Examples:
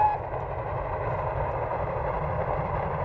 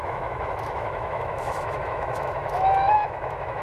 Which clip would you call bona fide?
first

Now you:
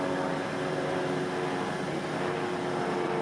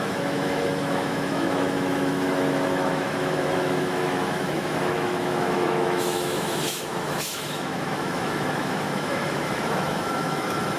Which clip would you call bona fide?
first